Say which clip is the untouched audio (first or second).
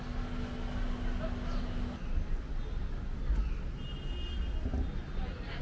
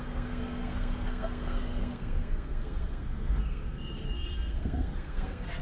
first